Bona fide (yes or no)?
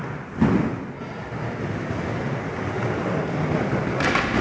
yes